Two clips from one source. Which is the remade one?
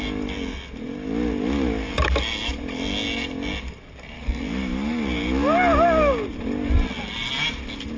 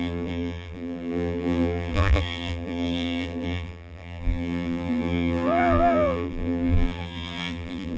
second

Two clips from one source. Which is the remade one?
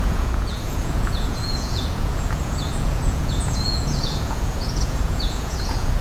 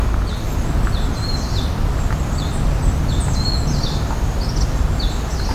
first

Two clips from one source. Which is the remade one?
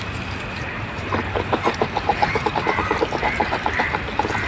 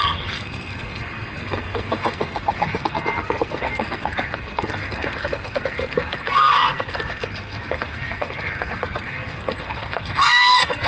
second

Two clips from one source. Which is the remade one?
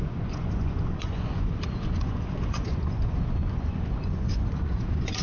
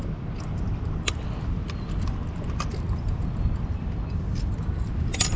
first